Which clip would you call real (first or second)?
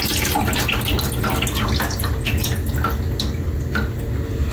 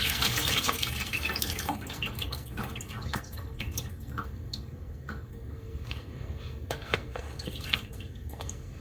first